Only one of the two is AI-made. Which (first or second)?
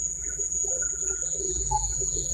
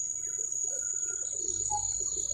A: first